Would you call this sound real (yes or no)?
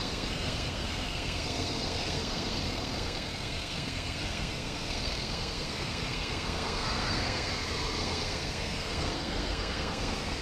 no